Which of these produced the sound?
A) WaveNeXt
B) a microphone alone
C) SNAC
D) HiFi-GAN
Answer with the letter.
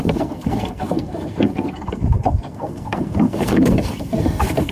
C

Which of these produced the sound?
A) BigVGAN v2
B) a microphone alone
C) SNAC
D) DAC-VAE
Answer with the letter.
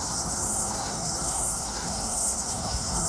C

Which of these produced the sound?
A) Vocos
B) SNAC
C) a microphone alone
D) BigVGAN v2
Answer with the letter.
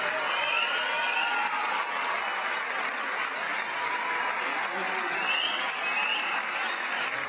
C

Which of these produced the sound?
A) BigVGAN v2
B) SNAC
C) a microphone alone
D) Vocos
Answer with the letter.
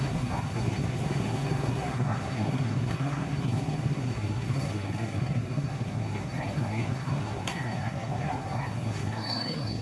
B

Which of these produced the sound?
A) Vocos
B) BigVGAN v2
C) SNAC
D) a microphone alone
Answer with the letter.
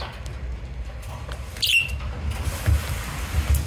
D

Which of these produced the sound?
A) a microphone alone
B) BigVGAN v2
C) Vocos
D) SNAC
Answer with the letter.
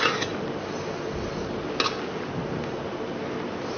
A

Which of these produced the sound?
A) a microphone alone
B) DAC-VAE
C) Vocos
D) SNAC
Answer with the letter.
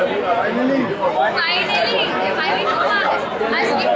A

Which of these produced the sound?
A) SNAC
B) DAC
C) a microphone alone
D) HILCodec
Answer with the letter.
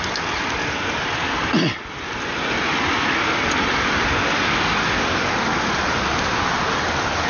C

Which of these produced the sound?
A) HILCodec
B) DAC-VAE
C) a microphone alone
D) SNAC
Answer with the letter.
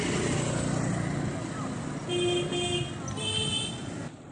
C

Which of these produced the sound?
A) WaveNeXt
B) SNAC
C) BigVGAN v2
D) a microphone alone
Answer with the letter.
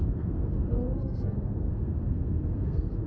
B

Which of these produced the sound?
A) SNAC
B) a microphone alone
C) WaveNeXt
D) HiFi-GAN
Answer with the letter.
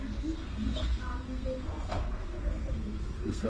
A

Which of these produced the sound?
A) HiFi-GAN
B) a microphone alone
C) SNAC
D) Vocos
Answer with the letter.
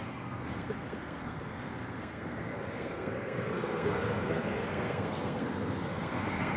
C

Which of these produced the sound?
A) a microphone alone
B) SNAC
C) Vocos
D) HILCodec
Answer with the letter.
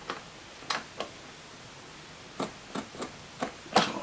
A